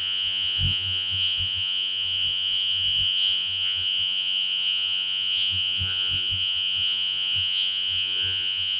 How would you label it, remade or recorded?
remade